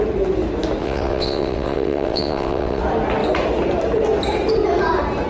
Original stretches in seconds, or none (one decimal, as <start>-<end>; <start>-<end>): 0.0-0.8; 2.8-5.3